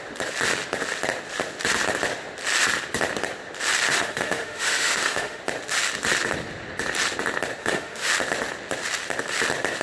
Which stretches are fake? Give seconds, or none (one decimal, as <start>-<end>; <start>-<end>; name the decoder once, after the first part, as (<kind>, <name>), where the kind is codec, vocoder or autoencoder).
3.9-5.4 (autoencoder, DAC-VAE); 7.6-8.1